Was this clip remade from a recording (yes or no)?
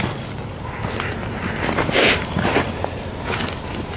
no